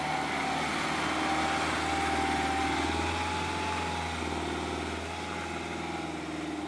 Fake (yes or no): no